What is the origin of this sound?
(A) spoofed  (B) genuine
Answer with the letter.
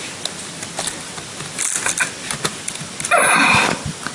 B